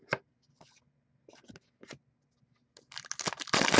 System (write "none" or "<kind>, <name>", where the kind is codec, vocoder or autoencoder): none